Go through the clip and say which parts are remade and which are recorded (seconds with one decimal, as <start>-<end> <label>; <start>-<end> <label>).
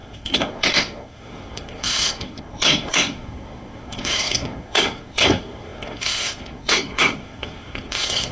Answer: 0.0-8.3 remade